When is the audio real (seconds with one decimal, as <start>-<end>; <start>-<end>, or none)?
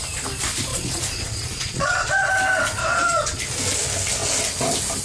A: 0.0-0.7; 2.3-2.8; 3.4-5.0